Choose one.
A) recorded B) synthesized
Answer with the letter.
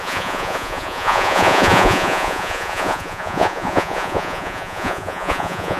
B